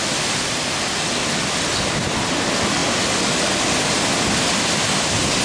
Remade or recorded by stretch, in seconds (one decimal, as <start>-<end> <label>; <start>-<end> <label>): 0.0-5.4 recorded